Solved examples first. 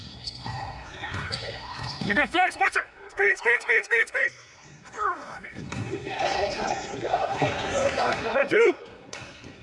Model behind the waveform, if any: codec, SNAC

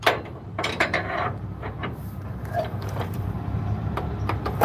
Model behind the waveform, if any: vocoder, BigVGAN v2